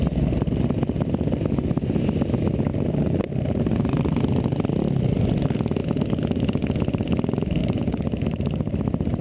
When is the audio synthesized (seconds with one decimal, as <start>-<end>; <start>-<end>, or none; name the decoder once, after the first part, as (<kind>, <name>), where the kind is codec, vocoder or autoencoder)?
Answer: 2.7-3.6 (vocoder, BigVGAN v2); 7.6-9.2